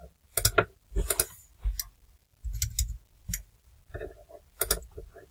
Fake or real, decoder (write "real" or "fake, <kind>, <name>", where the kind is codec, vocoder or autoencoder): real